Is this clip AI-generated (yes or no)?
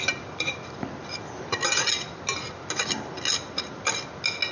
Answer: no